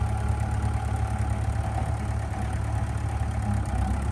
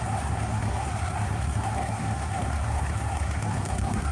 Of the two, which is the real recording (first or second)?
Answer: first